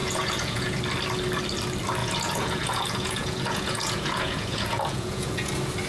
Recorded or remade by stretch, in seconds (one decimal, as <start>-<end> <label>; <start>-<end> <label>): 0.0-0.8 remade; 0.8-2.0 recorded; 2.0-5.5 remade; 5.5-5.9 recorded